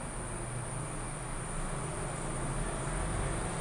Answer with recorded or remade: recorded